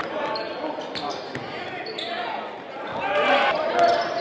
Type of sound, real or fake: real